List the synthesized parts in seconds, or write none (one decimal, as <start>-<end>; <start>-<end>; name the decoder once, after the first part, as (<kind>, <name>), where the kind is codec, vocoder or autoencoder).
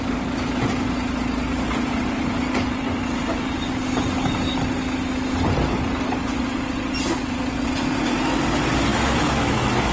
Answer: 8.9-9.9 (autoencoder, DAC-VAE)